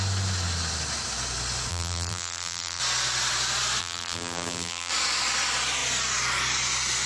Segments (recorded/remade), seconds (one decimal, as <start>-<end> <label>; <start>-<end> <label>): 0.0-1.7 recorded; 1.7-2.8 remade; 2.8-3.8 recorded; 3.8-4.9 remade; 4.9-7.1 recorded